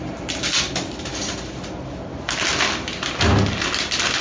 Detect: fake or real real